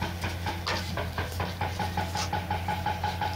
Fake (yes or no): no